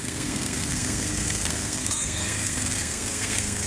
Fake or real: fake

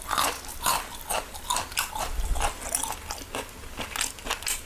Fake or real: real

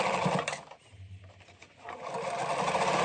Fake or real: real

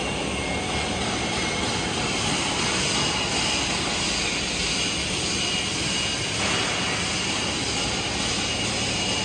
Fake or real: real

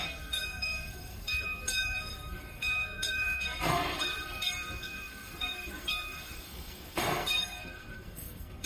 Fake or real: fake